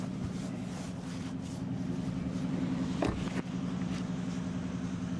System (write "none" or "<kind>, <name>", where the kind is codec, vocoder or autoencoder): none